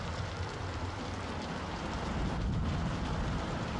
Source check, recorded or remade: recorded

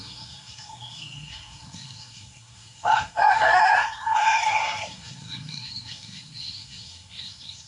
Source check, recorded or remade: remade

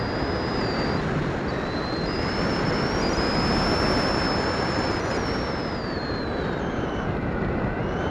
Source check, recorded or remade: recorded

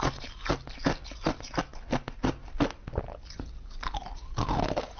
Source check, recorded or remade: recorded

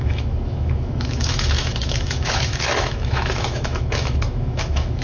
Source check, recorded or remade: remade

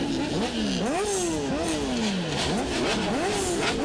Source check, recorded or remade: recorded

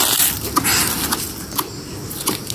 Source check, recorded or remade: recorded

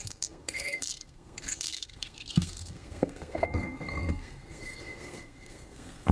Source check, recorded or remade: remade